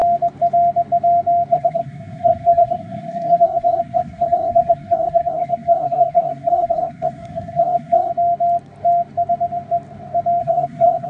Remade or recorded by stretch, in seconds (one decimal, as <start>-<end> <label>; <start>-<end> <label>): 0.0-1.5 recorded; 1.5-8.1 remade; 8.1-10.4 recorded; 10.4-11.1 remade